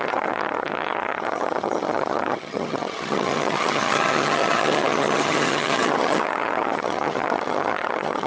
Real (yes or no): no